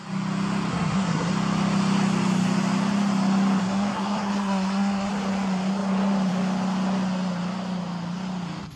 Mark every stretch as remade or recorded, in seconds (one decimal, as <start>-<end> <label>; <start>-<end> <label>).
0.0-0.7 recorded; 0.7-1.3 remade; 1.3-3.6 recorded; 3.6-5.1 remade; 5.1-8.8 recorded